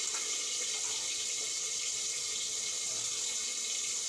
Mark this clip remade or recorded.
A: recorded